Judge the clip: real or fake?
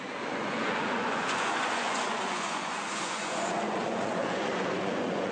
fake